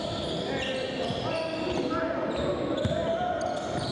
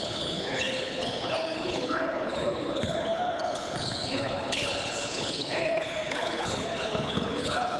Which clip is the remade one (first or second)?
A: second